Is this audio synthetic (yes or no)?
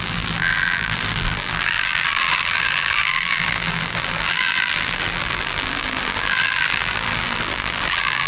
yes